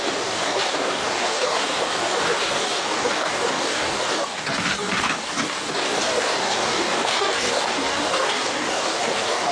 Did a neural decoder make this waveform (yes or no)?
yes